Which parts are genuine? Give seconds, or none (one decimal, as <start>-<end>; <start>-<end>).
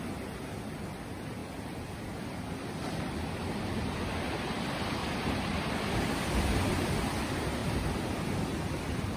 0.0-1.4; 2.9-5.0; 5.8-9.2